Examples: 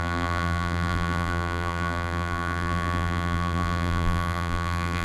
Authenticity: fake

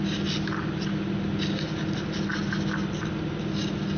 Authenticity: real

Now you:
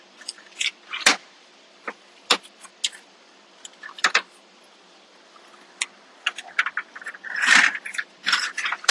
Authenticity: real